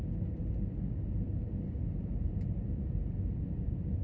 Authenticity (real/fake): real